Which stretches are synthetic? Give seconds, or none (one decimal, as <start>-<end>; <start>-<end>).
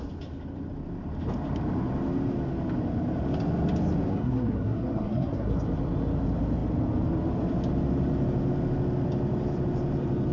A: 4.1-5.5